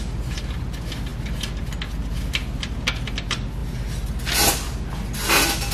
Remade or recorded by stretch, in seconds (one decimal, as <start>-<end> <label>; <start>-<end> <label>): 0.0-5.7 recorded